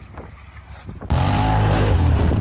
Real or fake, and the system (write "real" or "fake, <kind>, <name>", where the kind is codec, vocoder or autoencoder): real